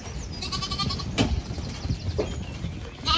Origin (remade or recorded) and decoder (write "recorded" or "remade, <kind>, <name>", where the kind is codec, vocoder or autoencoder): recorded